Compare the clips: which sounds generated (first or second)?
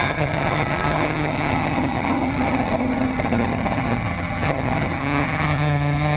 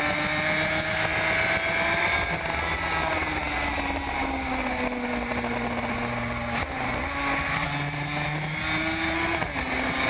first